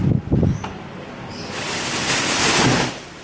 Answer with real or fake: fake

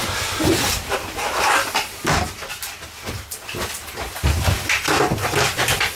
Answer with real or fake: fake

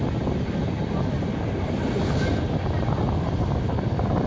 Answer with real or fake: real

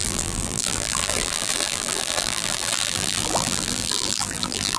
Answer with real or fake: fake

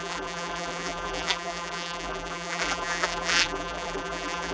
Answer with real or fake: fake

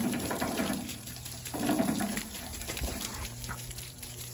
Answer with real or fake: fake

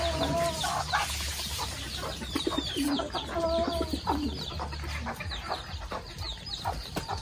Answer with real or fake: fake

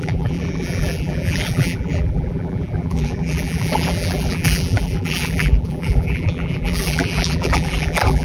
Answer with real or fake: fake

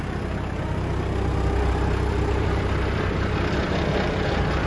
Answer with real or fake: fake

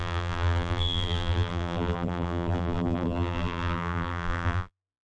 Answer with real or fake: fake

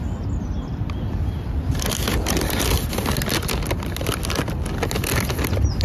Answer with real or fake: real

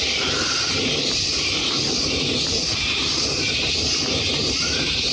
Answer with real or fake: fake